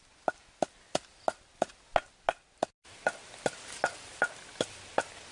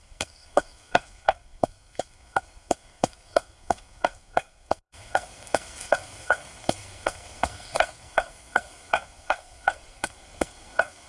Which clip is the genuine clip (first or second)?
first